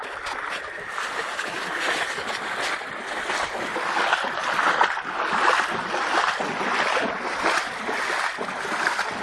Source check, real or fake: real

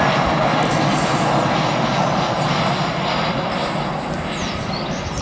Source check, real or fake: real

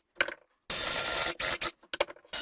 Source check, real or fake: real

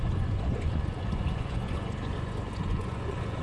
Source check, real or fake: fake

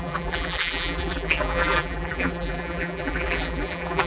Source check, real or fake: fake